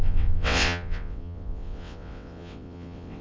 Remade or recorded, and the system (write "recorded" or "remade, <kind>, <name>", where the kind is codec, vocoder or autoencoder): remade, vocoder, WaveNeXt